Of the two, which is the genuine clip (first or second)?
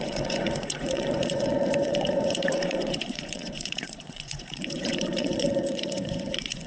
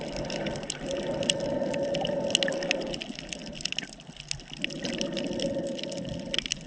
second